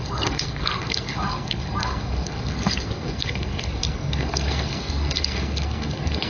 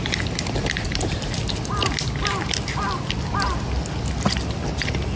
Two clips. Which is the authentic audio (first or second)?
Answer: second